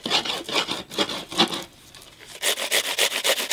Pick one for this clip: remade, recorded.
recorded